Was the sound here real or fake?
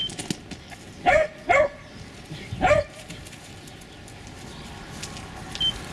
real